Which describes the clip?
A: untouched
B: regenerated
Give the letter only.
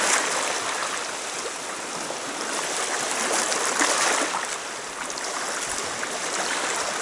A